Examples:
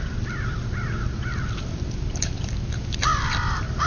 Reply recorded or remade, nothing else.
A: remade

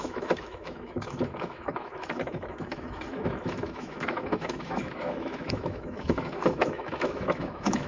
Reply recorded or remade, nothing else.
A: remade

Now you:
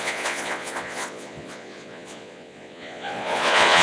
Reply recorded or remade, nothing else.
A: remade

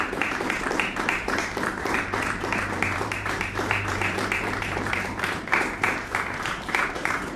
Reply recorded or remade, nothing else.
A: remade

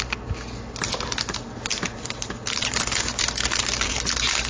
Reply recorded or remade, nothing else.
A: recorded